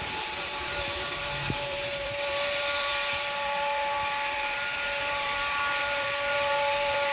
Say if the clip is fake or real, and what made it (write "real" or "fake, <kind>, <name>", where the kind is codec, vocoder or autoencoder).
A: fake, vocoder, BigVGAN v2